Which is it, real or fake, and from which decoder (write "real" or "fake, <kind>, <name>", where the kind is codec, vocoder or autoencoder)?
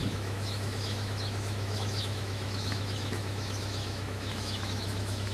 fake, autoencoder, DAC-VAE